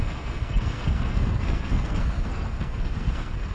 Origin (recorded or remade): remade